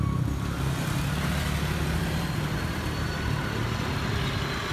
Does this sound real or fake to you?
real